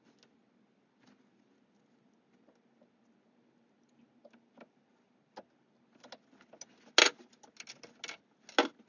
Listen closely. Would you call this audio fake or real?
real